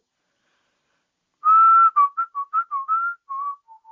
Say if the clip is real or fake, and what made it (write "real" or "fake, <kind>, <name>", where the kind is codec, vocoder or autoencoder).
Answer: real